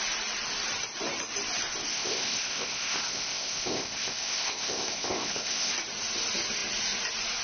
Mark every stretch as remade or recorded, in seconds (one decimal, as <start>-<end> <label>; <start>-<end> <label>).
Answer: 0.0-1.9 recorded; 1.9-5.7 remade; 5.7-7.4 recorded